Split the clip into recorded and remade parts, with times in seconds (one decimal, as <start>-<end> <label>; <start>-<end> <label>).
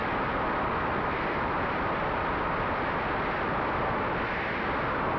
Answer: 0.0-5.2 recorded